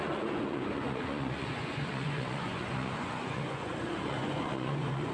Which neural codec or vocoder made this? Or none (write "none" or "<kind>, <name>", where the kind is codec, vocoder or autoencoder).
vocoder, Vocos